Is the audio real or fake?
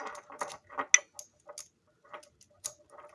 real